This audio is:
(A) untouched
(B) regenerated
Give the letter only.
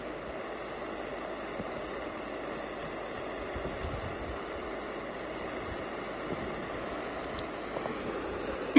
A